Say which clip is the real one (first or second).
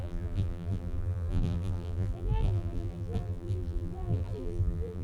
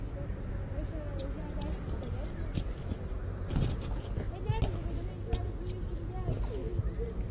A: second